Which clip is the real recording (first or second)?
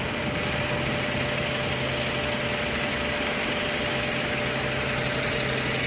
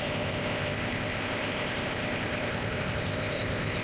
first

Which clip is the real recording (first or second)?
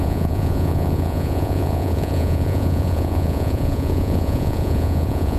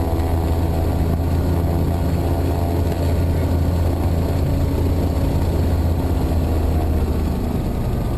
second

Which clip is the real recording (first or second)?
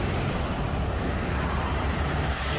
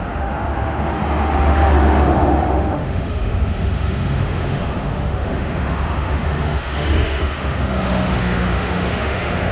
first